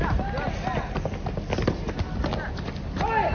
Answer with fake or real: real